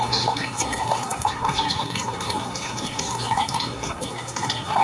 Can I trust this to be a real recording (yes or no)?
no